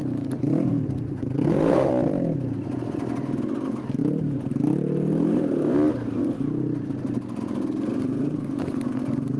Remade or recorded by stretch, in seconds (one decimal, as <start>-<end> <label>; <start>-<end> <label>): 0.0-0.7 recorded; 0.7-1.9 remade; 1.9-9.4 recorded